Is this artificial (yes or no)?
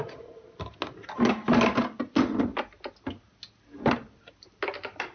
no